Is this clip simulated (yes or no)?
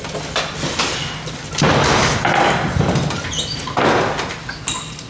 no